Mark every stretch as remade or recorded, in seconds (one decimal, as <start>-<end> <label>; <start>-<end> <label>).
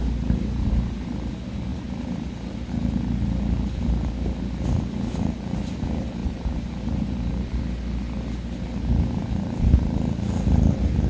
0.0-6.2 recorded; 6.2-7.6 remade; 7.6-11.1 recorded